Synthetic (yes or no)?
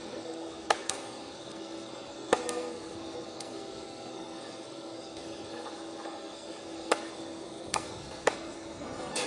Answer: yes